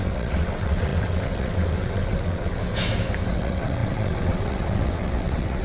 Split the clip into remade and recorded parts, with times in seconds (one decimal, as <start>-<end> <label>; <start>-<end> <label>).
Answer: 0.0-2.6 remade; 2.6-3.3 recorded; 3.3-5.6 remade